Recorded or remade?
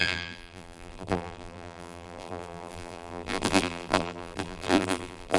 remade